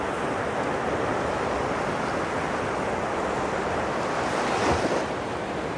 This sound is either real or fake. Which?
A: real